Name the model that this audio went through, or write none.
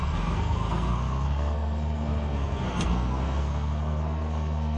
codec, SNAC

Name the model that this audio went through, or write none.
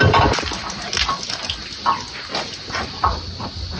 none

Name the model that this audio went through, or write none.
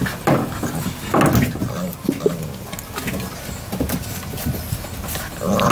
none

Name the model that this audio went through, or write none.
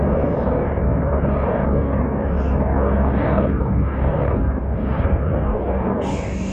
codec, DAC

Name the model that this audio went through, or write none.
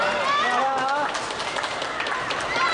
none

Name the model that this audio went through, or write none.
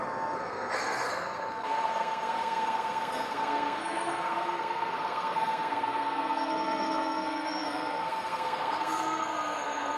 codec, SNAC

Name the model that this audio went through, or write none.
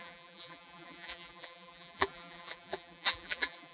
vocoder, BigVGAN v2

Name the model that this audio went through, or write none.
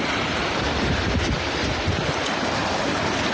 none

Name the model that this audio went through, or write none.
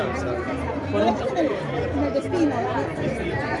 none